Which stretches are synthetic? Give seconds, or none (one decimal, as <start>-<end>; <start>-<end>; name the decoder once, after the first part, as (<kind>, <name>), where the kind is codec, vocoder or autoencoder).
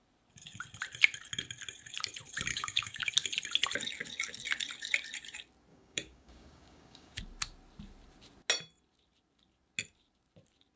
2.5-3.1 (codec, DAC); 5.7-7.2